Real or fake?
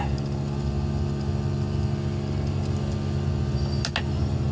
real